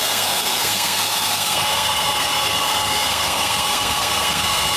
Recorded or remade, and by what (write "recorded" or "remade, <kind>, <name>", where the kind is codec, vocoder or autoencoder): remade, codec, SNAC